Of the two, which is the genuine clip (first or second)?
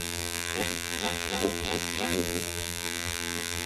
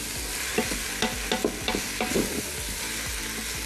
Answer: second